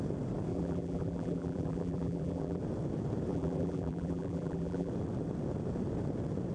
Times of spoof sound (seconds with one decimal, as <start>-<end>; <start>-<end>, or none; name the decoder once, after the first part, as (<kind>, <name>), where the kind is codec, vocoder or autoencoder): 0.5-2.6 (vocoder, BigVGAN v2); 3.3-4.9